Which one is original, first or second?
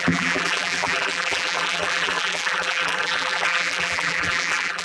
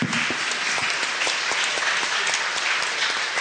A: second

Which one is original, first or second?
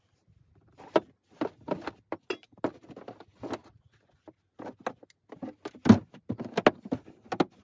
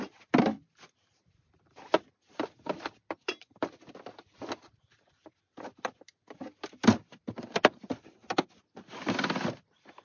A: first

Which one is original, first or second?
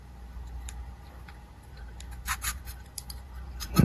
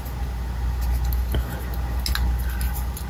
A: second